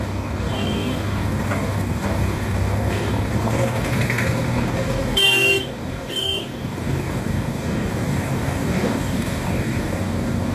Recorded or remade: remade